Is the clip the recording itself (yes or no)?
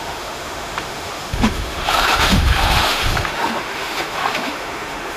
no